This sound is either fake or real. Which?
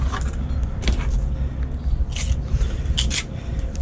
real